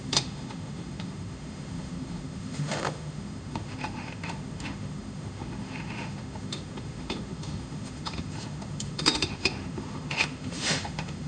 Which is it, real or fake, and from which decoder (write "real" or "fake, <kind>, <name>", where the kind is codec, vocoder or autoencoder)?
fake, autoencoder, DAC-VAE